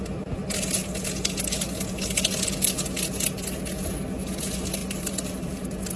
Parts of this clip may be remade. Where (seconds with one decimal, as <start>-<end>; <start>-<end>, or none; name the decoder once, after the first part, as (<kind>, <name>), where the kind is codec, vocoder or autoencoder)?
4.8-6.0 (vocoder, BigVGAN v2)